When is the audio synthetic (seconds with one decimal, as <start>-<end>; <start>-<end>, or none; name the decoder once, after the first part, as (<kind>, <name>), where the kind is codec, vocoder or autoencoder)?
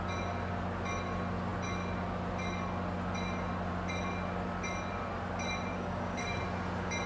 5.7-6.4 (codec, DAC)